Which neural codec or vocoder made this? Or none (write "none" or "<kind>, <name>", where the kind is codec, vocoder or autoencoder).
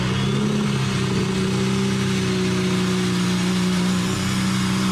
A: none